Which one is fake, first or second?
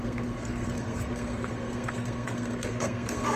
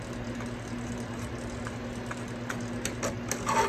first